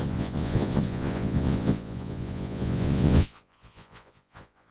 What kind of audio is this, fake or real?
fake